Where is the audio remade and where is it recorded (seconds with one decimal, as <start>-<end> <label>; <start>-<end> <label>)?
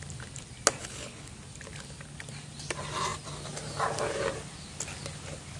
0.0-0.8 recorded; 0.8-1.3 remade; 1.3-5.6 recorded